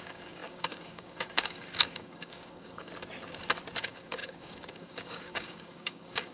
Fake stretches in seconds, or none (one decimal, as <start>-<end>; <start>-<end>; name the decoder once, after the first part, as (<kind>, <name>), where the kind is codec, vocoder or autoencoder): 0.0-2.9 (codec, DAC); 3.8-6.3